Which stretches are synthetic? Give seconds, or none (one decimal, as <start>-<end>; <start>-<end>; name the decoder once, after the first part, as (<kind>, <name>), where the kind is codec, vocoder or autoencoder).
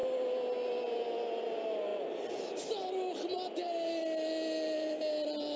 none